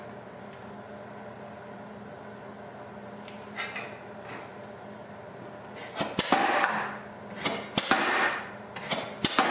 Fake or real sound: real